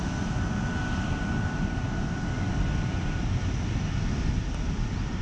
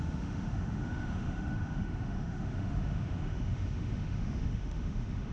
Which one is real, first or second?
first